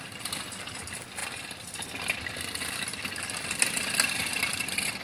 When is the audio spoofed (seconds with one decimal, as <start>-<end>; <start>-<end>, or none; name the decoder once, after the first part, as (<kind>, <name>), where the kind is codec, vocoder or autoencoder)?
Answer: none